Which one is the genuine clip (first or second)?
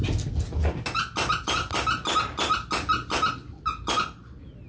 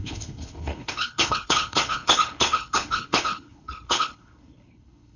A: first